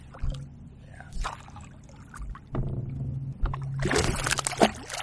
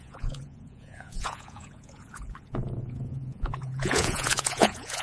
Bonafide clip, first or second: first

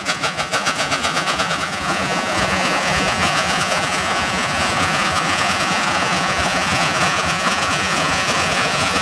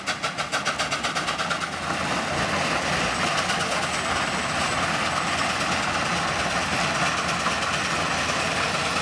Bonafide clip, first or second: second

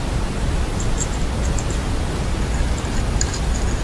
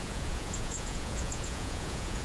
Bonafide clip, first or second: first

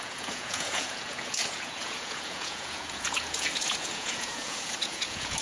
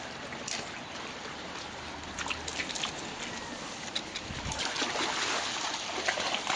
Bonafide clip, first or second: second